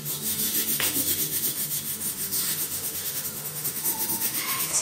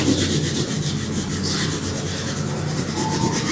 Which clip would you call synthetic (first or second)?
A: first